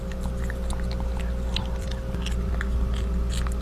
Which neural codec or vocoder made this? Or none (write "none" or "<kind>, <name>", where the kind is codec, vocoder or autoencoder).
none